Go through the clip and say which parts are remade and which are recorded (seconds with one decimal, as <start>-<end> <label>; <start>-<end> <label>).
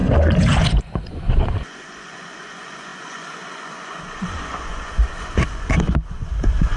0.0-6.8 remade